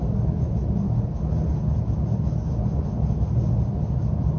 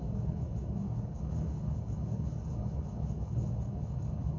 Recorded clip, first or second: first